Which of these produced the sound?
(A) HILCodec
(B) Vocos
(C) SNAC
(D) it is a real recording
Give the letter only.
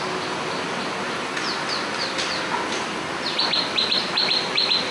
D